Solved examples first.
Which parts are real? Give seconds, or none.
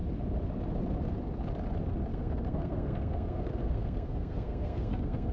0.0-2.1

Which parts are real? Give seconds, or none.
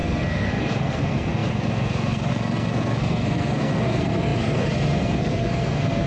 none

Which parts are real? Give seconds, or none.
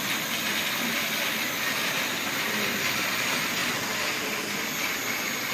0.0-5.5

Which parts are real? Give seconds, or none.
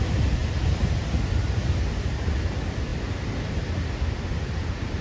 0.0-5.0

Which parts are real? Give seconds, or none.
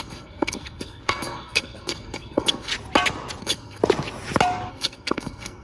2.7-3.4; 3.8-4.7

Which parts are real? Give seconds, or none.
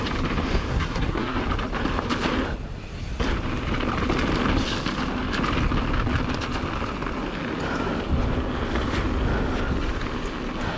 0.0-0.7; 1.4-10.8